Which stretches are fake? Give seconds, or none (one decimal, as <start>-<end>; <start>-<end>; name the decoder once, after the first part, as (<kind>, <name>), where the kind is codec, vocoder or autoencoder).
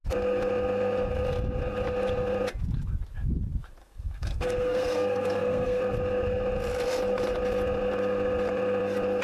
3.8-5.8 (codec, SNAC)